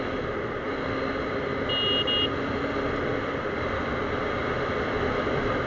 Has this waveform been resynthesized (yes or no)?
no